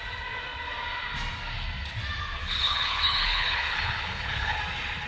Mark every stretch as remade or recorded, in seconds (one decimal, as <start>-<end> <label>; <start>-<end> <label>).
0.0-2.4 recorded; 2.4-4.6 remade; 4.6-5.1 recorded